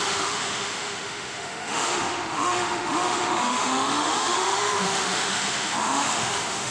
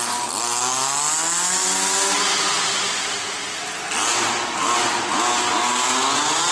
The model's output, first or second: first